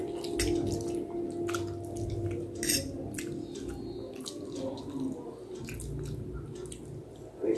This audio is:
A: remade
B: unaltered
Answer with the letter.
B